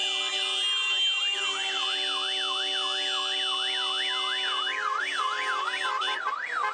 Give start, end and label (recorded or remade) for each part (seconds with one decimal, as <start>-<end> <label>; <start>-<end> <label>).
0.0-6.7 recorded